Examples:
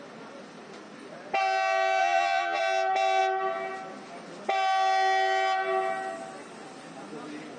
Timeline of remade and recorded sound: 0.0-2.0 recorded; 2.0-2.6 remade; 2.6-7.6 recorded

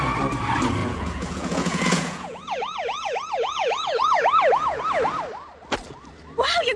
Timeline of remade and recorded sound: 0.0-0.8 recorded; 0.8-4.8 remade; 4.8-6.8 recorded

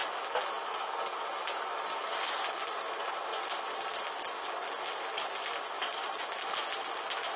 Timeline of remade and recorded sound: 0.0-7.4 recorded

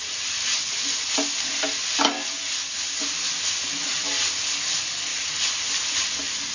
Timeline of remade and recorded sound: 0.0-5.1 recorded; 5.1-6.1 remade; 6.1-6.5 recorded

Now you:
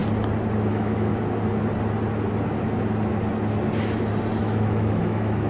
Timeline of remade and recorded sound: 0.0-0.7 recorded; 0.7-1.1 remade; 1.1-4.4 recorded; 4.4-5.5 remade

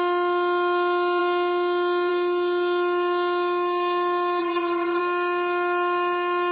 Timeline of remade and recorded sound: 0.0-4.4 recorded; 4.4-5.0 remade; 5.0-6.5 recorded